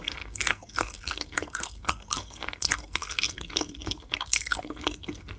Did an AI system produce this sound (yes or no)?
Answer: yes